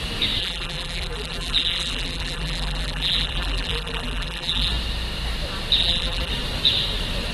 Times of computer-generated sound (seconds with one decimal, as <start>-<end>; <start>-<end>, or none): 0.4-4.7; 5.8-6.3